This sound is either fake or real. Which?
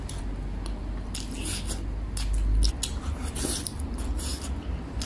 real